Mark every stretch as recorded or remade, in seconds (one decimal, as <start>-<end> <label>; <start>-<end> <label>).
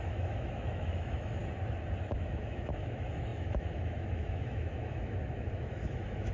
0.0-1.4 remade; 1.4-2.0 recorded; 2.0-6.3 remade